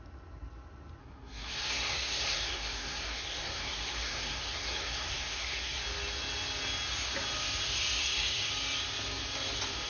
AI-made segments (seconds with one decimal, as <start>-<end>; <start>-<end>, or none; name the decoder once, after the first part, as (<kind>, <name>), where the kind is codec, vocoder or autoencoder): 1.0-5.8 (codec, SNAC); 8.0-8.5